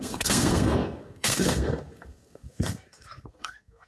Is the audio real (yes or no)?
no